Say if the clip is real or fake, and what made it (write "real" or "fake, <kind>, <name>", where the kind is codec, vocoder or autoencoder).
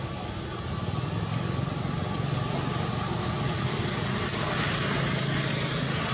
real